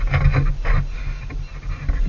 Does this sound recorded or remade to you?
recorded